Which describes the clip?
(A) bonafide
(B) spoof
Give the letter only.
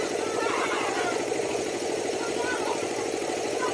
B